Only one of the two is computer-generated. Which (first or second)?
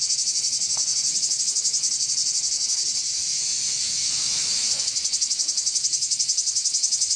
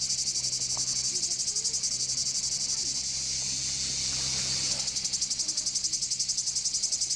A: first